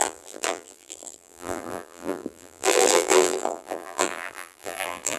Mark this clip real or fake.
fake